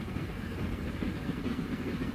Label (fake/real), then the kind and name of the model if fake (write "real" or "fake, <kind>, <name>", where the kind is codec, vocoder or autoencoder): fake, codec, SNAC